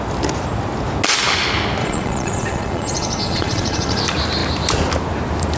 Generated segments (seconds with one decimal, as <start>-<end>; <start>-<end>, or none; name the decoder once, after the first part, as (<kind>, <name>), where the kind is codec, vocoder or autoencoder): 1.8-4.0 (vocoder, Vocos)